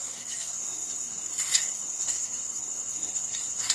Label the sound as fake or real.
fake